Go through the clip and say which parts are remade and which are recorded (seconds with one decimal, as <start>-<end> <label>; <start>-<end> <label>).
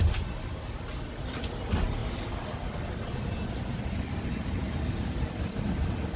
0.0-4.6 recorded; 4.6-5.3 remade; 5.3-6.2 recorded